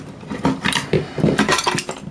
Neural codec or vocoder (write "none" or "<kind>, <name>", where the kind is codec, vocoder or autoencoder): none